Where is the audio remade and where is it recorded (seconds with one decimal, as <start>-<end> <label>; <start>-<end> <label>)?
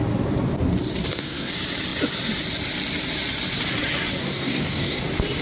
0.0-1.0 recorded; 1.0-1.5 remade; 1.5-4.2 recorded; 4.2-5.0 remade; 5.0-5.4 recorded